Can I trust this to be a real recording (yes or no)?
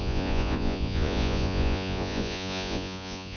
no